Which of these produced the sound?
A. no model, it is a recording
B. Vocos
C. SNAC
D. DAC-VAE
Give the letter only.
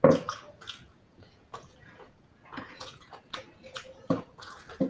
B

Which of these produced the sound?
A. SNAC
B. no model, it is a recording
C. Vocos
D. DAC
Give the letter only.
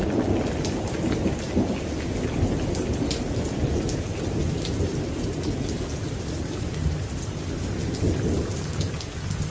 B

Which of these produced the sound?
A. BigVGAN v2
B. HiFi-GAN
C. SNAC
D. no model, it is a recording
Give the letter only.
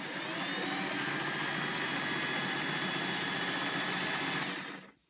D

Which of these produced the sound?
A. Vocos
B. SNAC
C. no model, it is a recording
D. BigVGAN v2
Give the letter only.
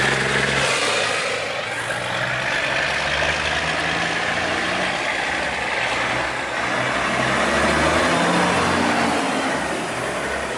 C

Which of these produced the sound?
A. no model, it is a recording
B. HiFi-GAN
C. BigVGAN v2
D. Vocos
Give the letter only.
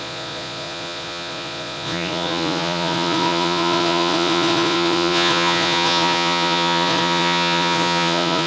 D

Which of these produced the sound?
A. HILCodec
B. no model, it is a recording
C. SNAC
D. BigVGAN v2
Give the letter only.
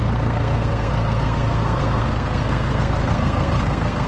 C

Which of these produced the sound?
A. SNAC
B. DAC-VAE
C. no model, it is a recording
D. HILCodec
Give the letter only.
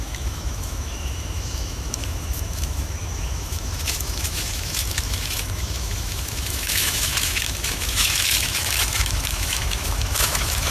B